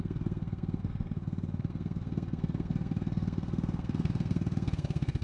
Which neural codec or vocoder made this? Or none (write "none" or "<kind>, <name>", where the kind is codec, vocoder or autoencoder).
codec, SNAC